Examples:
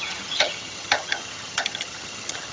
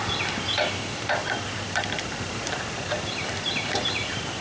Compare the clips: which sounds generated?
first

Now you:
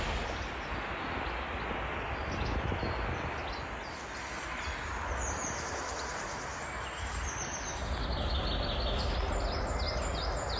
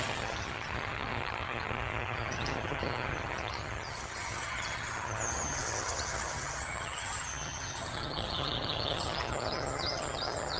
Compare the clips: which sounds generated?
second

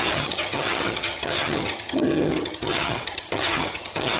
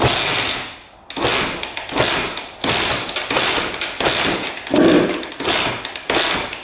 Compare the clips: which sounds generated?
first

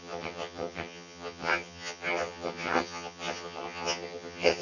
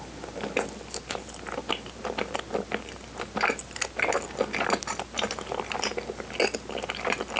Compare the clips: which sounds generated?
first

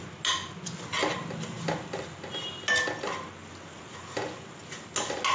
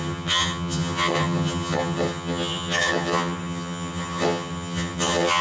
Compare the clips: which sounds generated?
second